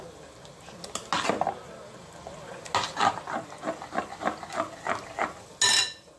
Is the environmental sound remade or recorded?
recorded